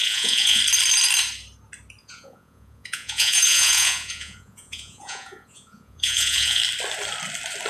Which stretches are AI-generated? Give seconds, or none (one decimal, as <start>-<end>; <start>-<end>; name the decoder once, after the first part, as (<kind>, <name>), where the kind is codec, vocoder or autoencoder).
0.0-0.6 (vocoder, Vocos); 2.0-6.6